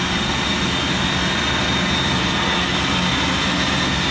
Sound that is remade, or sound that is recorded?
recorded